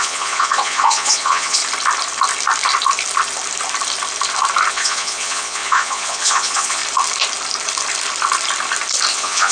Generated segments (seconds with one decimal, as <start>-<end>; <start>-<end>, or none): 0.0-1.6; 4.7-6.8; 9.1-9.5